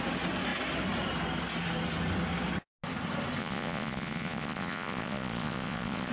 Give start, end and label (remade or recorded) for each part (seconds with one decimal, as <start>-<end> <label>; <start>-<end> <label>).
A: 0.0-3.4 recorded; 3.4-6.1 remade